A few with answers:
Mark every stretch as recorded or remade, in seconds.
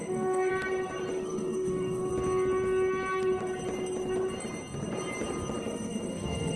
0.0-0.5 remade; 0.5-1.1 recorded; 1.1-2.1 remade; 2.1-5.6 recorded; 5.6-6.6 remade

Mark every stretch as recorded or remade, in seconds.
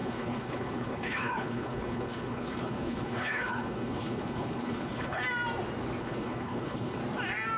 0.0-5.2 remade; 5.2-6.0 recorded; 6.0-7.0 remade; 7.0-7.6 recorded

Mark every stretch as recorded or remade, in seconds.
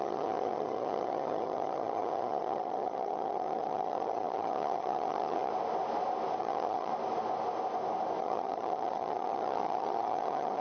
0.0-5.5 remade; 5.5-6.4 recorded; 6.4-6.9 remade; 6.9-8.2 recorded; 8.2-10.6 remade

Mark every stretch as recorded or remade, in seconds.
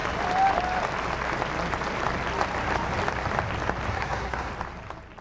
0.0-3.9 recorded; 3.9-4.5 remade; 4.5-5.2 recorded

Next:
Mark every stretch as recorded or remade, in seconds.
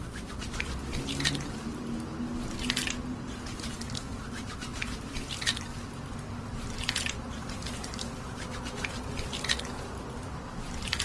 0.0-11.0 recorded